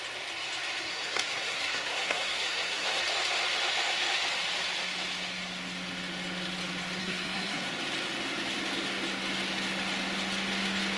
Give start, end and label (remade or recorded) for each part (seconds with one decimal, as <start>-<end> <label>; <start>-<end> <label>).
0.0-0.9 recorded; 0.9-3.0 remade; 3.0-7.0 recorded; 7.0-7.6 remade; 7.6-11.0 recorded